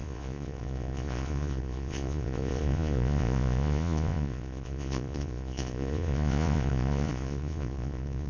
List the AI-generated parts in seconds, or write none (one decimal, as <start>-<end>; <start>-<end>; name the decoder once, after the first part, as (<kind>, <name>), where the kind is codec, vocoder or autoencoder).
0.0-8.3 (vocoder, Vocos)